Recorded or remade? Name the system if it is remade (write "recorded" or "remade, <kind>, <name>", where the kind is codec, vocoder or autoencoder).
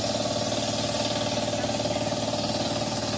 recorded